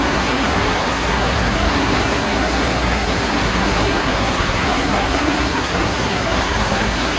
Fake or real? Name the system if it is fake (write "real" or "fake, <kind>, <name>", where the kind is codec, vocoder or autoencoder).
fake, codec, SNAC